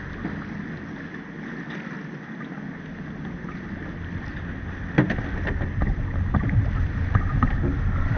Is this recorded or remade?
recorded